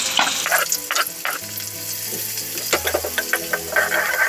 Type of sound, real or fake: real